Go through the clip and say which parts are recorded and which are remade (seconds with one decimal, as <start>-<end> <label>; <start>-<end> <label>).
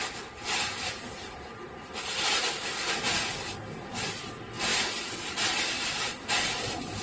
0.0-7.0 recorded